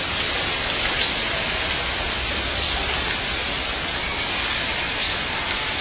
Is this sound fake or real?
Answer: real